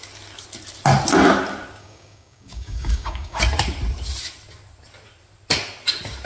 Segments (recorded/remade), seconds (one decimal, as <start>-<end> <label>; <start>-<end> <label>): 0.0-1.8 recorded; 1.8-3.4 remade; 3.4-6.2 recorded